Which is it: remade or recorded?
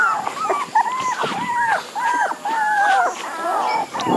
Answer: recorded